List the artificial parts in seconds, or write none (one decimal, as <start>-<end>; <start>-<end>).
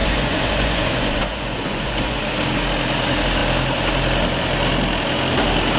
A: 0.0-2.2